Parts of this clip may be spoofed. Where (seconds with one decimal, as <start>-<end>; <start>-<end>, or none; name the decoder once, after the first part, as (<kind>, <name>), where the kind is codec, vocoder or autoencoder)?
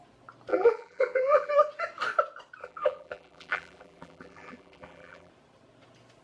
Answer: 0.5-1.5 (vocoder, BigVGAN v2); 2.6-5.3